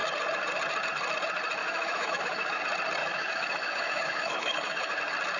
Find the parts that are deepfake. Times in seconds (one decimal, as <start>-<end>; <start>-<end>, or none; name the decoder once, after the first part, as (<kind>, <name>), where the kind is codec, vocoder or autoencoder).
1.6-2.6 (autoencoder, DAC-VAE); 3.0-5.0